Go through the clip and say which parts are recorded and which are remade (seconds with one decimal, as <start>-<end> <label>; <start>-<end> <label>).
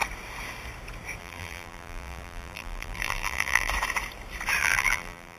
0.0-1.2 recorded; 1.2-3.7 remade; 3.7-4.6 recorded; 4.6-5.4 remade